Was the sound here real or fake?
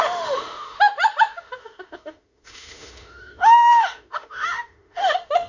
fake